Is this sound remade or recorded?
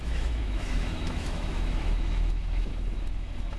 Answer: remade